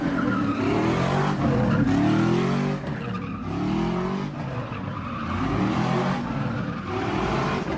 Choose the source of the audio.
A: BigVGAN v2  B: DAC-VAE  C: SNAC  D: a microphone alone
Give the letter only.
D